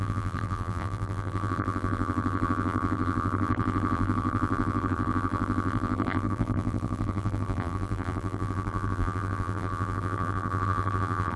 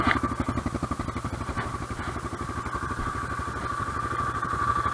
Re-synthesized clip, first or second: first